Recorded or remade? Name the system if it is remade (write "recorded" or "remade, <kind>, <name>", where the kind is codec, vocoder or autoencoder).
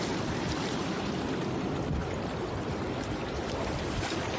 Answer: remade, vocoder, BigVGAN v2